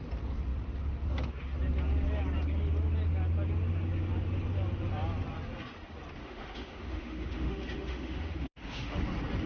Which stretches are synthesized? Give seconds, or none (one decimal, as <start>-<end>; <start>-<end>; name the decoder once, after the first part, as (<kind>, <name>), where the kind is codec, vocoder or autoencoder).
6.2-9.0 (autoencoder, DAC-VAE)